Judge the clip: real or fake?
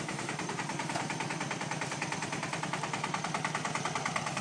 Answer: fake